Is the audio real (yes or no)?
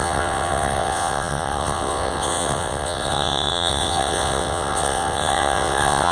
no